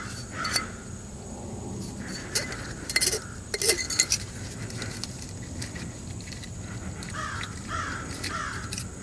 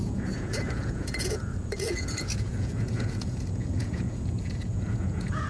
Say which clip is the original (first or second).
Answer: first